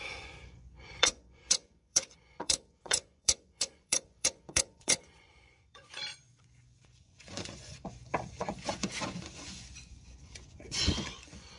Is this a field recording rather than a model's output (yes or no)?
no